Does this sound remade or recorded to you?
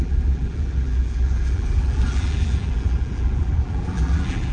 remade